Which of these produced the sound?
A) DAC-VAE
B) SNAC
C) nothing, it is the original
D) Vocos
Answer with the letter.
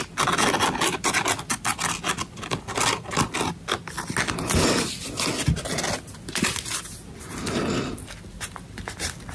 C